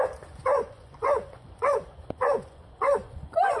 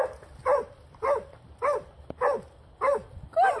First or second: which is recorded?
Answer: second